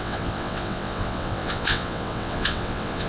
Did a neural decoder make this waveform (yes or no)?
yes